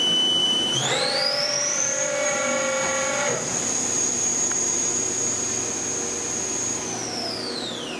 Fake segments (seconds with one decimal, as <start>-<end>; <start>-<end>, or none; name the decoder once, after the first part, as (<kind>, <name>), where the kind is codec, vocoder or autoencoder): 0.4-2.4 (vocoder, BigVGAN v2)